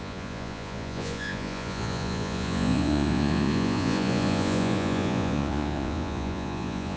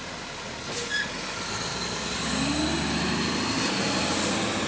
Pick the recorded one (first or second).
second